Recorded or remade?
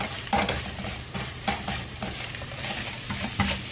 recorded